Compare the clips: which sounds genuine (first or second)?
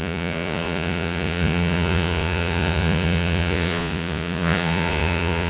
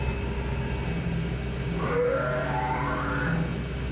second